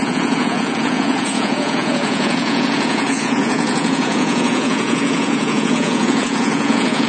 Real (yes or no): no